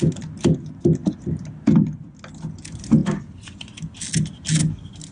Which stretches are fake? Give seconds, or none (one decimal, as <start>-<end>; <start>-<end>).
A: none